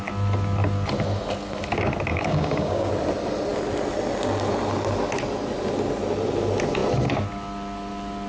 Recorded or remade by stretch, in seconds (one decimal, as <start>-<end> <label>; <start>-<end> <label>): 0.0-2.1 recorded; 2.1-2.9 remade; 2.9-8.3 recorded